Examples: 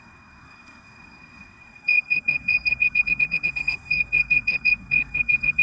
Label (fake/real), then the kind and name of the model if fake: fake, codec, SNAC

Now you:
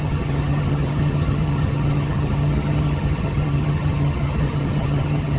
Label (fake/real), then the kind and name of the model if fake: fake, vocoder, HiFi-GAN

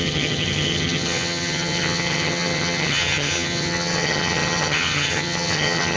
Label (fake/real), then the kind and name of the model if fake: fake, vocoder, HiFi-GAN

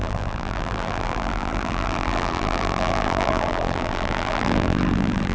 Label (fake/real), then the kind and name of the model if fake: fake, vocoder, BigVGAN v2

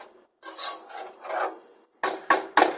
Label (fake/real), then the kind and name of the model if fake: real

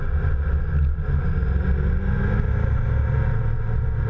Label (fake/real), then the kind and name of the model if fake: real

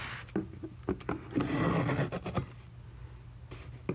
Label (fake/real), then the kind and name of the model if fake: real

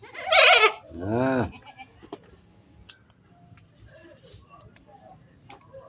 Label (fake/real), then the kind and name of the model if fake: real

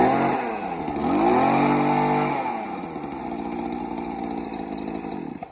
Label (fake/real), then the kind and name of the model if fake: real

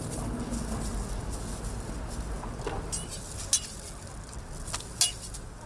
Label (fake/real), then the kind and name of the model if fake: real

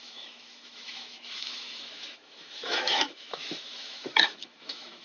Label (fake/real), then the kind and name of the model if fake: fake, autoencoder, DAC-VAE